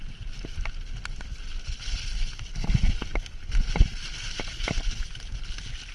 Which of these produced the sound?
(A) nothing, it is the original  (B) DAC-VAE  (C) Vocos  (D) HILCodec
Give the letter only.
A